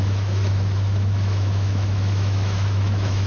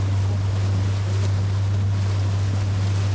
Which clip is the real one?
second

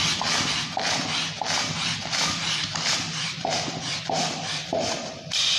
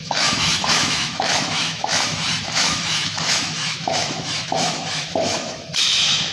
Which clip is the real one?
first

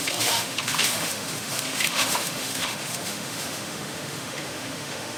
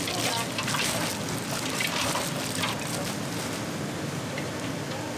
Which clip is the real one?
second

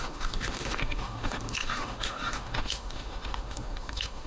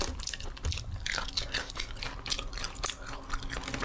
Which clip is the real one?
second